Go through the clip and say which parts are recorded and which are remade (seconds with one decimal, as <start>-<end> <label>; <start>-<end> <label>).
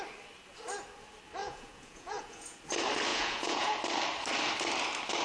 0.0-1.4 recorded; 1.4-2.6 remade; 2.6-3.1 recorded; 3.1-3.8 remade; 3.8-5.2 recorded